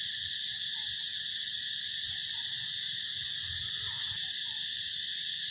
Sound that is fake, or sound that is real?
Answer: real